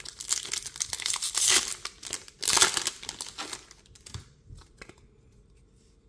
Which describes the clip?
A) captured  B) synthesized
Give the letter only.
A